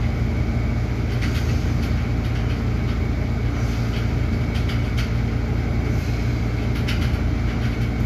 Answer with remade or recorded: recorded